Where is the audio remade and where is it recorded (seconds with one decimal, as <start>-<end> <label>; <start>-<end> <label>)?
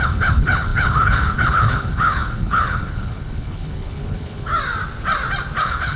0.0-4.5 remade; 4.5-5.6 recorded; 5.6-6.0 remade